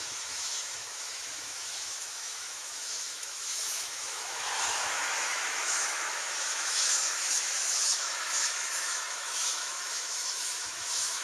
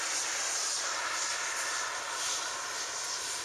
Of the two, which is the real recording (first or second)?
second